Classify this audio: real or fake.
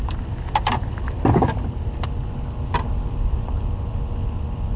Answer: real